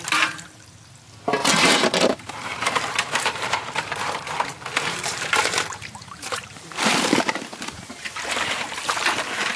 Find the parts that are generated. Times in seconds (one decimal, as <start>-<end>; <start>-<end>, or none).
0.0-1.4; 2.3-9.6

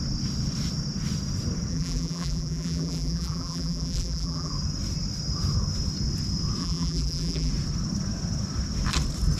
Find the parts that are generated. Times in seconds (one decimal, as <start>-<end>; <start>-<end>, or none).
1.7-4.5; 6.6-7.5

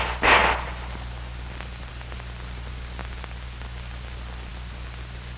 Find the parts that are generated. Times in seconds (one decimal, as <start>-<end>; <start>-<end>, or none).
none

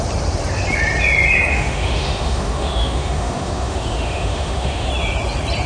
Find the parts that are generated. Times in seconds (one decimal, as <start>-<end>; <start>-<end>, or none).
1.5-4.9

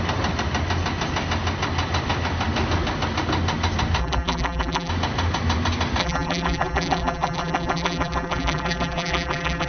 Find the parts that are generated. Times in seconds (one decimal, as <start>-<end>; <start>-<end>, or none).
4.0-4.9; 6.0-9.7

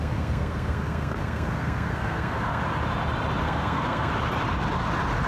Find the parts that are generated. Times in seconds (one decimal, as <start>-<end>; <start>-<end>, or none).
0.0-2.6; 3.4-4.1

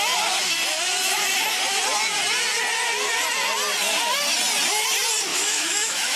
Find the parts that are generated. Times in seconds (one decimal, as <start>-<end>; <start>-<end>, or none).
5.3-6.2

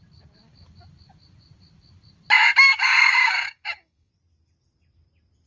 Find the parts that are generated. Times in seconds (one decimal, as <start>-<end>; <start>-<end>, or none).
2.7-4.1